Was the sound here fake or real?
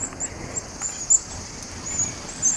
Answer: real